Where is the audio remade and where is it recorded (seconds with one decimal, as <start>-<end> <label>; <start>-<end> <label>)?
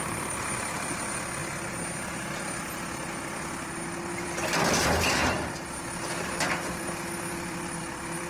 0.0-1.4 remade; 1.4-3.1 recorded; 3.1-8.3 remade